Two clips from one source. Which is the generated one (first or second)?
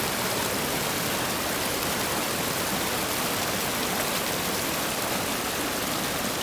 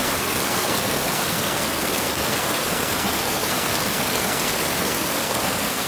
second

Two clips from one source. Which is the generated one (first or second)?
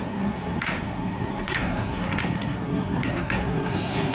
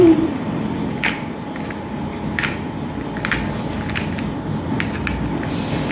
first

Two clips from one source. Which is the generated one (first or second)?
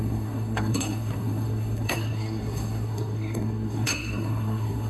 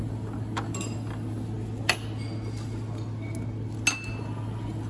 first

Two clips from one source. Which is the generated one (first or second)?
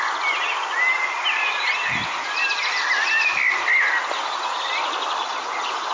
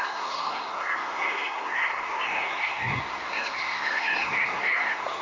second